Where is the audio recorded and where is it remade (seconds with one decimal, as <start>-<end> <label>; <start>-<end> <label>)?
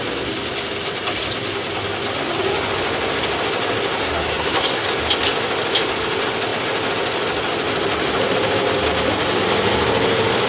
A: 0.0-4.0 recorded; 4.0-4.9 remade; 4.9-10.5 recorded